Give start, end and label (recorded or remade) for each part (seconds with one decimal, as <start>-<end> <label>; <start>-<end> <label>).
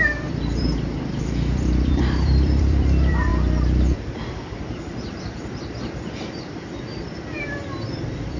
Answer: 0.0-3.3 remade; 3.3-4.2 recorded; 4.2-8.4 remade